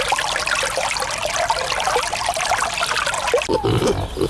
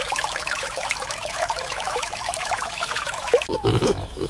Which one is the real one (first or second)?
first